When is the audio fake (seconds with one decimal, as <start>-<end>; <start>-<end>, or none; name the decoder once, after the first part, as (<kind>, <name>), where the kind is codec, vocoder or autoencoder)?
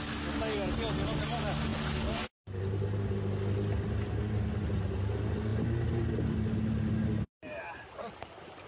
none